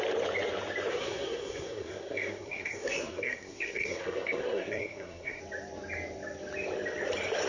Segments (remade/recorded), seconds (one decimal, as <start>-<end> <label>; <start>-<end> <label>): 0.0-0.9 recorded; 0.9-5.4 remade; 5.4-7.5 recorded